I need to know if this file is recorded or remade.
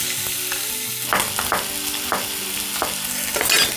recorded